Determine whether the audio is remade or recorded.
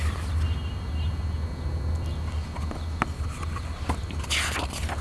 recorded